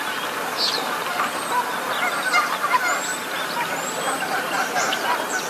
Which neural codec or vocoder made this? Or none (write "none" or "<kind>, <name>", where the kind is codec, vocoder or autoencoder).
none